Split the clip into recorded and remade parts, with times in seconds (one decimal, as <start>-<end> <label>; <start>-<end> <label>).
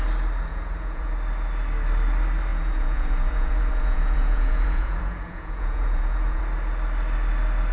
0.0-0.5 recorded; 0.5-1.1 remade; 1.1-2.5 recorded; 2.5-6.4 remade; 6.4-7.7 recorded